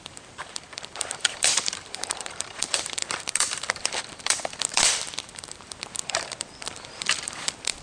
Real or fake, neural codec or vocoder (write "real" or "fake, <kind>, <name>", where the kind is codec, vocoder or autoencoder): fake, vocoder, BigVGAN v2